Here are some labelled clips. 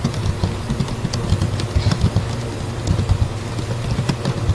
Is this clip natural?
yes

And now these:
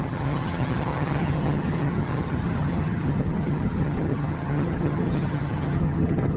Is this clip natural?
no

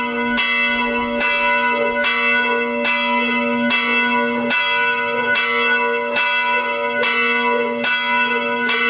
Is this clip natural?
yes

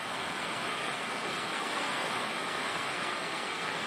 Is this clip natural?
no